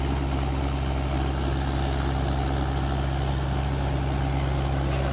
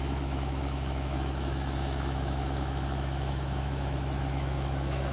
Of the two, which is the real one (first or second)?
first